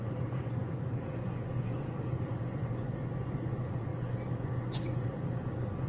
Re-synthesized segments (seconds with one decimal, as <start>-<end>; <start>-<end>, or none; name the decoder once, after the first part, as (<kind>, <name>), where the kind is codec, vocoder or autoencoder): 0.0-5.9 (vocoder, Vocos)